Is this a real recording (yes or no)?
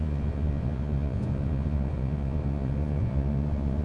no